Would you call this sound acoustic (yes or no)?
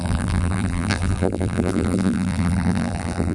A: no